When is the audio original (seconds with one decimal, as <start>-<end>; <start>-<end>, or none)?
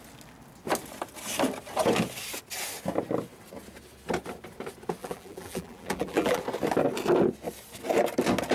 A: 0.0-5.0; 6.4-8.5